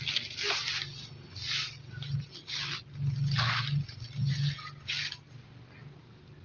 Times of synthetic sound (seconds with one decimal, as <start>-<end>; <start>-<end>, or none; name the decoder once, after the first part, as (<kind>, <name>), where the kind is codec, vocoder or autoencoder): none